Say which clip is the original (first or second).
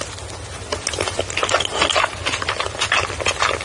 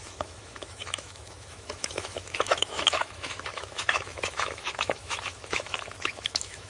first